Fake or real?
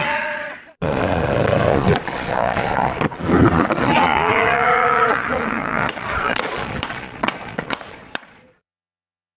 fake